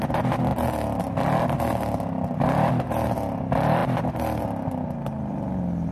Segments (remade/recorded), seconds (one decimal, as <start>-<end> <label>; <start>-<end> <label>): 0.0-3.8 recorded; 3.8-4.4 remade; 4.4-5.9 recorded